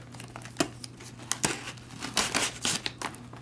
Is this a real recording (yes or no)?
yes